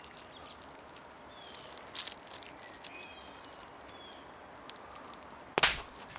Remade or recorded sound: recorded